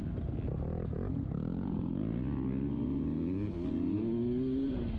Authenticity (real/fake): real